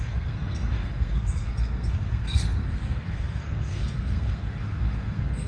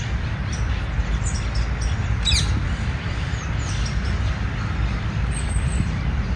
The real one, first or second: second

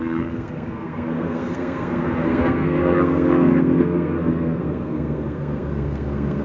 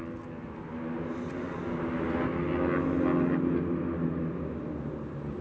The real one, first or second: second